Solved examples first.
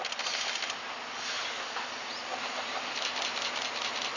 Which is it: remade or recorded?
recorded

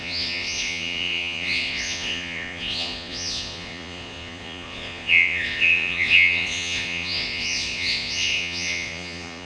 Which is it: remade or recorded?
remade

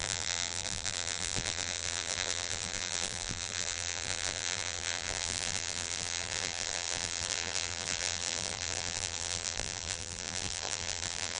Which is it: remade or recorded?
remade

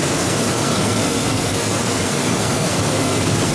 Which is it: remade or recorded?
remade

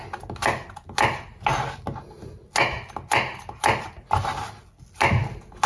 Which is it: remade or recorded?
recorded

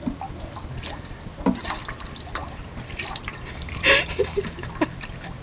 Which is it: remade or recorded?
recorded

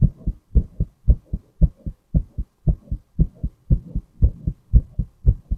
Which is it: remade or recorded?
recorded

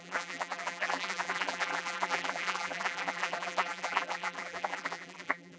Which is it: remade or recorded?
remade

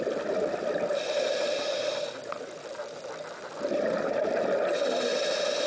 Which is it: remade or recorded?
recorded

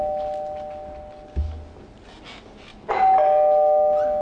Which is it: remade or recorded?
recorded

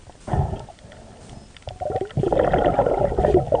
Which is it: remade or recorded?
recorded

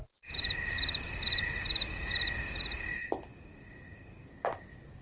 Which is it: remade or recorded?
recorded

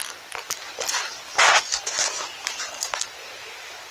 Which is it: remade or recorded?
recorded